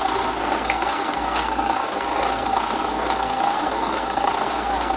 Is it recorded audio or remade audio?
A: remade